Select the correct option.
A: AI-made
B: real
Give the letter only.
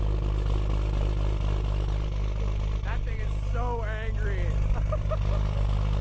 B